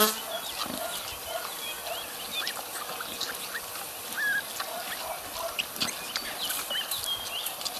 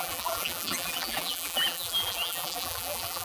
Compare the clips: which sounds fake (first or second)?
second